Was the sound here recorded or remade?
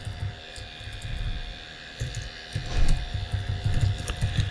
recorded